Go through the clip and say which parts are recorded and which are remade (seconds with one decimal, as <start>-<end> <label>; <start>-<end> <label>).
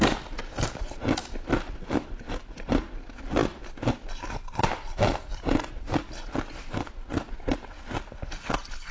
0.0-8.9 recorded